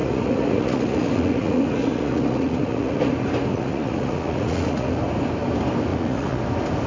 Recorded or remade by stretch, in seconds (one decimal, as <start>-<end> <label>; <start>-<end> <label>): 0.0-3.1 remade; 3.1-3.5 recorded; 3.5-5.0 remade; 5.0-5.9 recorded; 5.9-6.4 remade; 6.4-6.9 recorded